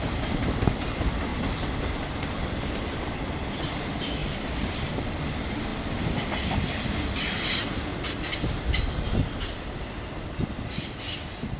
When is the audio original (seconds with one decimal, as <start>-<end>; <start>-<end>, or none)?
0.0-1.3; 3.0-5.7; 6.3-11.6